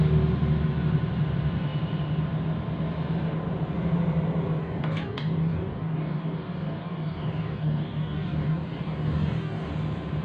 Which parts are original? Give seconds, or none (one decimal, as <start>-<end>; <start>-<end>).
0.0-4.6; 9.7-10.2

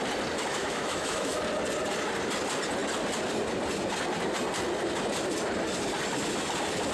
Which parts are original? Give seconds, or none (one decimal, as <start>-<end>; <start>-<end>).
0.0-0.6; 1.4-6.9

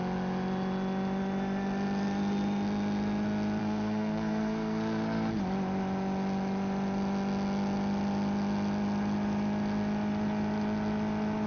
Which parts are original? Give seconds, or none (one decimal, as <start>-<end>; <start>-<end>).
0.0-3.6; 5.3-11.5

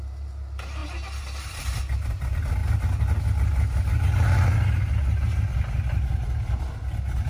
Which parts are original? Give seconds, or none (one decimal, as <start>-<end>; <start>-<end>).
0.0-7.3

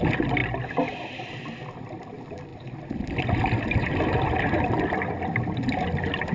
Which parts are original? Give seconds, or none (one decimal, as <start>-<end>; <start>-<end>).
0.0-6.3

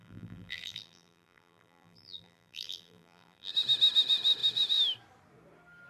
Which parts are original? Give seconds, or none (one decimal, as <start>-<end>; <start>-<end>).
3.5-5.9

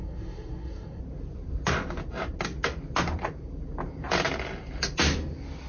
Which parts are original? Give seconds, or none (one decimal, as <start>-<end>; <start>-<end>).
1.0-5.7